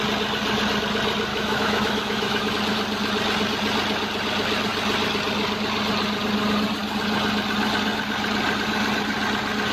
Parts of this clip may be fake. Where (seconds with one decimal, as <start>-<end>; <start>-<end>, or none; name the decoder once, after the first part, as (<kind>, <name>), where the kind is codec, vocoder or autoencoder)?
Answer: 1.3-2.5 (autoencoder, DAC-VAE)